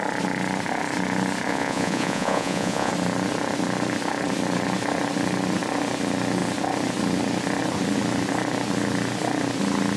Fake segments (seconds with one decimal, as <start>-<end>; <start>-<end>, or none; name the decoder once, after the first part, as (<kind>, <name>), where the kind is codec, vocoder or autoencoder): 1.5-2.9 (vocoder, Vocos)